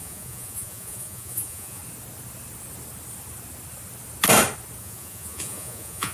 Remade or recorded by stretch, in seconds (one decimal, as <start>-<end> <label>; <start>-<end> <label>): 0.0-1.8 remade; 1.8-4.8 recorded; 4.8-6.1 remade